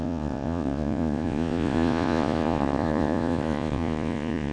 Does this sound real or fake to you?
fake